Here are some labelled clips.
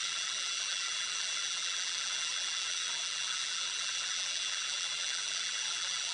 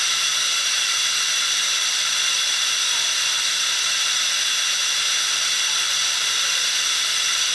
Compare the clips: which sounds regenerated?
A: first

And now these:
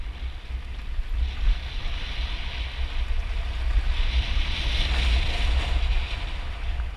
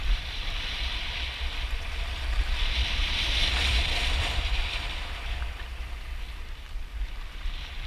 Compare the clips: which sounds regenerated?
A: second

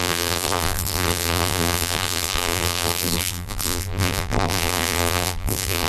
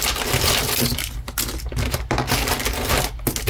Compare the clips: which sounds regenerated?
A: first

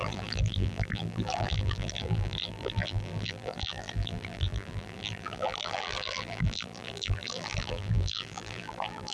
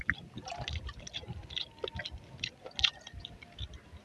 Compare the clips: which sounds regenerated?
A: first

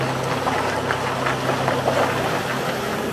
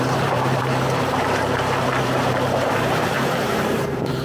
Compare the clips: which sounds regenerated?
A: second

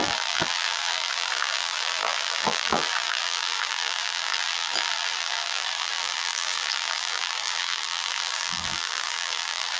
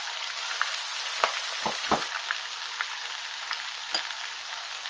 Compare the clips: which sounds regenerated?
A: first